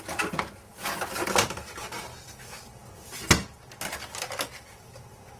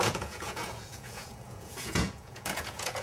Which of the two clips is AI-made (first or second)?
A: second